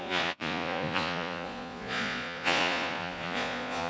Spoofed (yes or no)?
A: yes